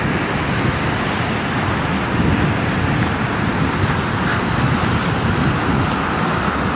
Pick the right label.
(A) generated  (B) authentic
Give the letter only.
B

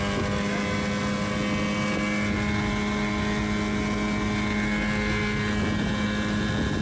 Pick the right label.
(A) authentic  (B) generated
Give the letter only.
A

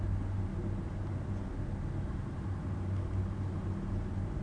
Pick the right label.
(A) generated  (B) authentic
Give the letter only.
B